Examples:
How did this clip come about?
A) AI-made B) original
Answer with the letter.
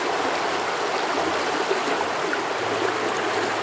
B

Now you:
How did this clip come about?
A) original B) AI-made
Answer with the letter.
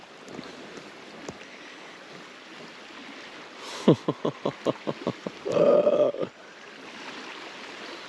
A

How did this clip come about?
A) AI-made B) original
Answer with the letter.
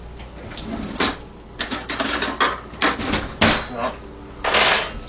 B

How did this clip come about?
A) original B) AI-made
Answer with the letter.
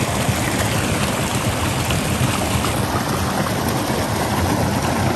A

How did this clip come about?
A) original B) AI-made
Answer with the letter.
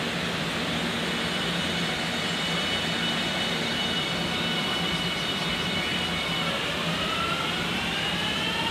A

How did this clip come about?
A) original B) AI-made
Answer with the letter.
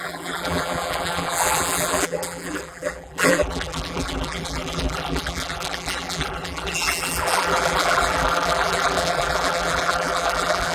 B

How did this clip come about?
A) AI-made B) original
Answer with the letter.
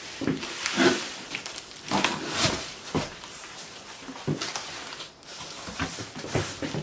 A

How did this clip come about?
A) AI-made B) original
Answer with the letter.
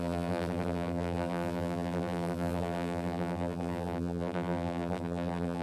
A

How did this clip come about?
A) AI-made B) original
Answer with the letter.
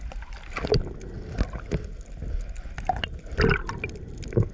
B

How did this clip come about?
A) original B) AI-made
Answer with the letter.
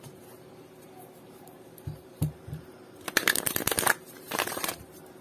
B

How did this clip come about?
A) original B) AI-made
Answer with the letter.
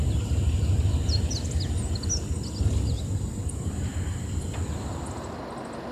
A